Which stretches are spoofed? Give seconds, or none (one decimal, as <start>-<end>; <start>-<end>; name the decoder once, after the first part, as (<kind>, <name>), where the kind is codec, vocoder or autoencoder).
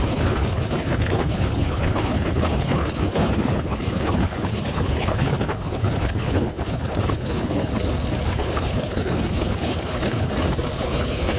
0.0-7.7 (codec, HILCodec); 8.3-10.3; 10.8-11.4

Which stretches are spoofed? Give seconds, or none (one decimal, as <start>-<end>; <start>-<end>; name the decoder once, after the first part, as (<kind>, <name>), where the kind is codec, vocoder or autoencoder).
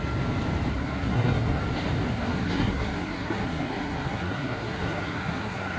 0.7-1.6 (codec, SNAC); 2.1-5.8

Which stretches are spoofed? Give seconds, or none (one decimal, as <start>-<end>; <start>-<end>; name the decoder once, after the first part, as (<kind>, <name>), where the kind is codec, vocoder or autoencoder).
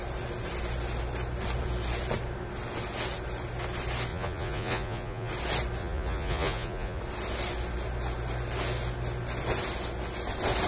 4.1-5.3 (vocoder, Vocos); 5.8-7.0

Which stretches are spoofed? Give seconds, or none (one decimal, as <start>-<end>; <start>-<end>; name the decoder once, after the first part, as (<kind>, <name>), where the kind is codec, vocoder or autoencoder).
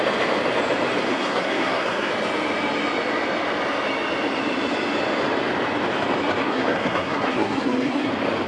1.1-2.1 (codec, SNAC); 6.4-8.1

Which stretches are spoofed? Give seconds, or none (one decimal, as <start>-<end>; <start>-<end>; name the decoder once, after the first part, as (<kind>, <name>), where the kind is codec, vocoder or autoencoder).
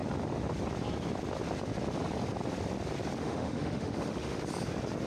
3.2-4.4 (autoencoder, DAC-VAE)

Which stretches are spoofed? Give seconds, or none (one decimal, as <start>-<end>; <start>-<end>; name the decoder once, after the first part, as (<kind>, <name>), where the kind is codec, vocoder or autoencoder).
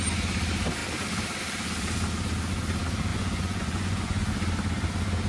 3.1-4.3 (vocoder, Vocos)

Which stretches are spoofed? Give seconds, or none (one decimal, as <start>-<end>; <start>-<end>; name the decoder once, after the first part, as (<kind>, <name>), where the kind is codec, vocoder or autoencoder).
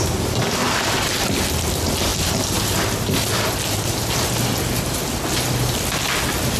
none